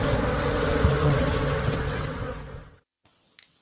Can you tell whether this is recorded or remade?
remade